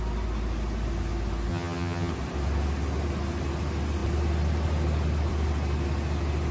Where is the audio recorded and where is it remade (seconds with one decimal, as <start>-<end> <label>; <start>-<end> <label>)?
0.0-1.5 recorded; 1.5-2.1 remade; 2.1-6.5 recorded

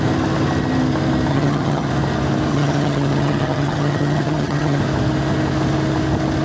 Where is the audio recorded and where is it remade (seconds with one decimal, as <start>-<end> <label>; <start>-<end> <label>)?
0.0-1.3 recorded; 1.3-1.9 remade; 1.9-2.5 recorded; 2.5-4.8 remade; 4.8-6.4 recorded